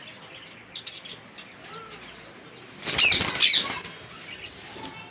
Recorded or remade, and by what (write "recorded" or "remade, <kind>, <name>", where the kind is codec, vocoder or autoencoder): recorded